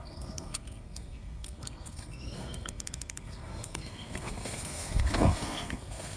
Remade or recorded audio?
remade